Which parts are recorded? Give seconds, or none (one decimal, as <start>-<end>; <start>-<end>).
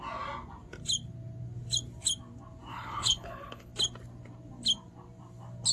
0.0-2.7; 3.7-5.7